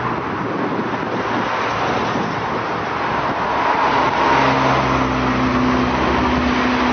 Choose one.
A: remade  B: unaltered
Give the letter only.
B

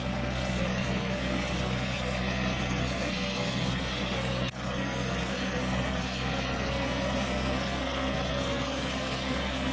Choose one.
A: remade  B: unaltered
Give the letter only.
A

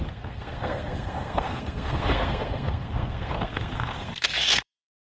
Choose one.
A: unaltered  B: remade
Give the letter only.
B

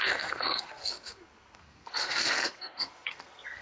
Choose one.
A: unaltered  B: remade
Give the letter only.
B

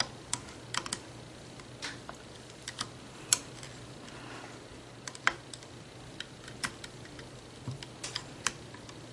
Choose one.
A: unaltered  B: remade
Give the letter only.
A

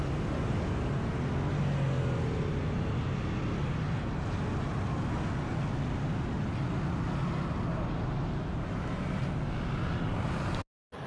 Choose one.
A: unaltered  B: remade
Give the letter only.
A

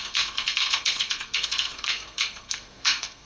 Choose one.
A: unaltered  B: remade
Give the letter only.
B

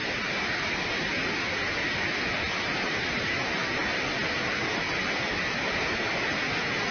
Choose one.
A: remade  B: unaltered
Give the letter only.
B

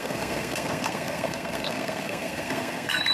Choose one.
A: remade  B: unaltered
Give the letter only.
A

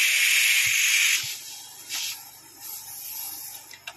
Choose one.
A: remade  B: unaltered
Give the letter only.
B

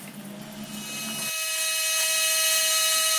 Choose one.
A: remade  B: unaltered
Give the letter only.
B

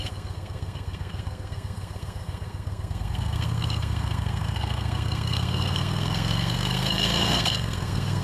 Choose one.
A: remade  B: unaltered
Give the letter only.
A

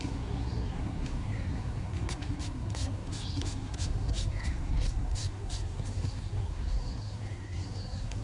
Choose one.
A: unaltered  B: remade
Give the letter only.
B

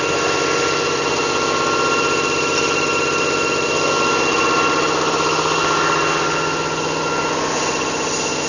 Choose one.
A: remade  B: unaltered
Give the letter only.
B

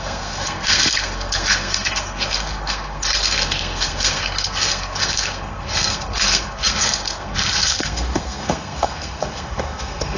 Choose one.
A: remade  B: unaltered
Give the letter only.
A